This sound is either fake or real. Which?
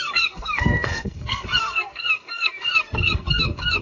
fake